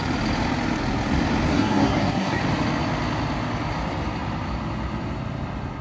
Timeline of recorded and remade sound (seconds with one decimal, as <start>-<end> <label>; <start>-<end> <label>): 0.0-1.5 recorded; 1.5-2.4 remade; 2.4-5.8 recorded